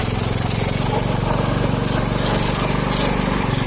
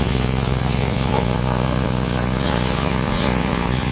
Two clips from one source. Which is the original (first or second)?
first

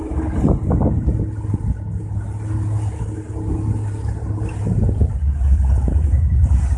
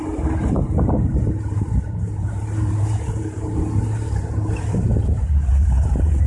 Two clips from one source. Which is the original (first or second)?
first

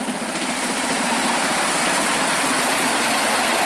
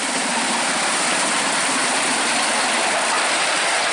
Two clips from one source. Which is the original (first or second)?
first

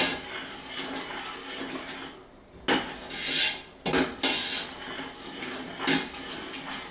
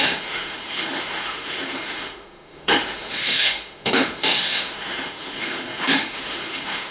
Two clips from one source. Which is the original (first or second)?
first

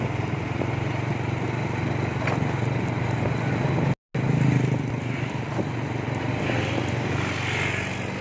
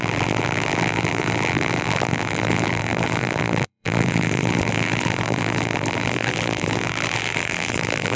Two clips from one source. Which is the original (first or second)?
first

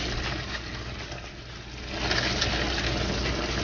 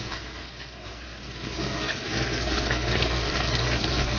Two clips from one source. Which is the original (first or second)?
first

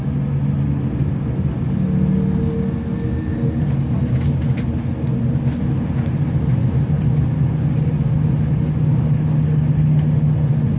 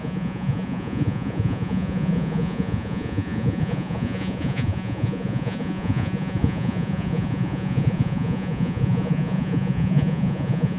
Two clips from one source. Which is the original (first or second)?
first